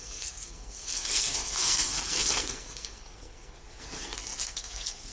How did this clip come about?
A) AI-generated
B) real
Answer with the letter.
A